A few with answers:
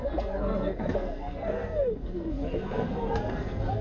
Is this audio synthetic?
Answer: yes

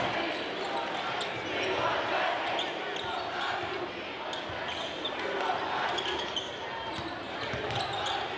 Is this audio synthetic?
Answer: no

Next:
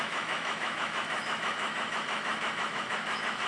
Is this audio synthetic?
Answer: yes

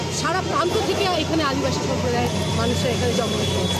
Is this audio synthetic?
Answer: no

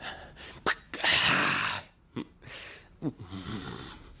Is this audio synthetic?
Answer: no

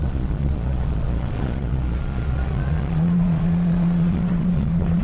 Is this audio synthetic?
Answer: yes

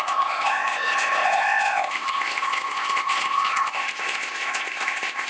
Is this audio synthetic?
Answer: yes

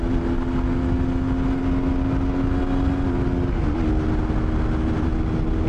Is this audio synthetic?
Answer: no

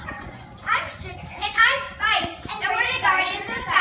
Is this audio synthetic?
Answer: yes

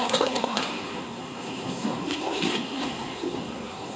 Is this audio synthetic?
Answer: yes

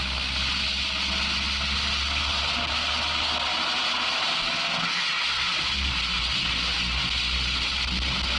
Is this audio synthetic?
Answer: no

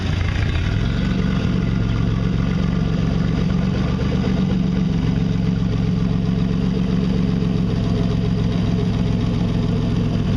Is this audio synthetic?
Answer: no